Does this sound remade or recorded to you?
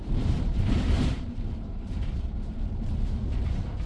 remade